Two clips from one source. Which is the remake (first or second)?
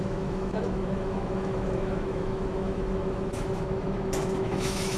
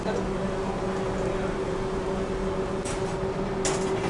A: first